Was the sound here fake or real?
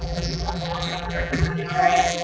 fake